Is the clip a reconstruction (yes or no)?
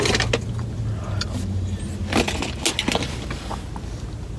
no